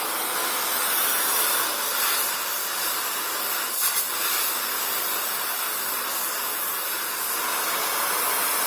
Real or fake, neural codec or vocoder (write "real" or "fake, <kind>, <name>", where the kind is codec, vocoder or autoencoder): real